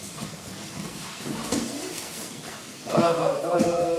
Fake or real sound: fake